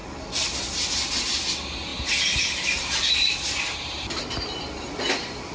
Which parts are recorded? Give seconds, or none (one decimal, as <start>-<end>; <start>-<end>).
0.0-5.5